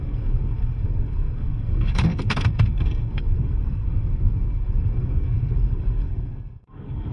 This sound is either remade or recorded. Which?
remade